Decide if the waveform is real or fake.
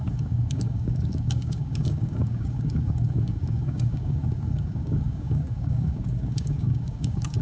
fake